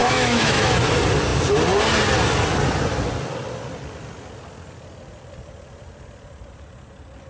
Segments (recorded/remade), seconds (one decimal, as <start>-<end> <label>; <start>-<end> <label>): 0.0-0.8 remade; 0.8-7.3 recorded